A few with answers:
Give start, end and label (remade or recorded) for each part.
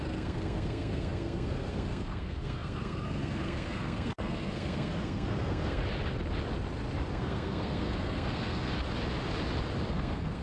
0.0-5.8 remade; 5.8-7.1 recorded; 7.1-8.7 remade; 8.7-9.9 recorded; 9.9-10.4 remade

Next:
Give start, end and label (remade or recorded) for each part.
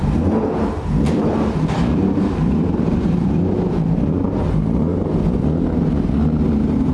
0.0-4.9 remade; 4.9-6.5 recorded; 6.5-6.9 remade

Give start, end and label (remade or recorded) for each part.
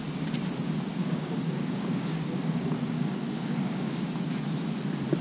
0.0-0.9 recorded; 0.9-4.0 remade; 4.0-5.2 recorded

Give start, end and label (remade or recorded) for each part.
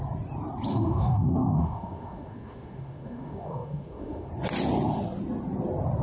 0.0-0.7 recorded; 0.7-4.3 remade; 4.3-6.0 recorded